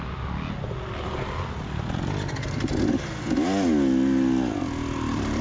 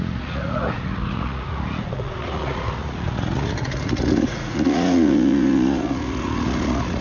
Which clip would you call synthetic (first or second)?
second